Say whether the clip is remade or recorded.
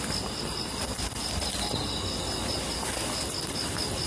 recorded